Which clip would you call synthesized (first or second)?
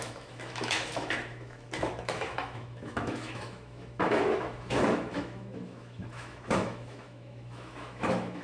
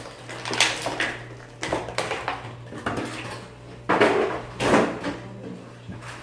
first